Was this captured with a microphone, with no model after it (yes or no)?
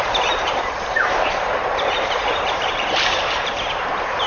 no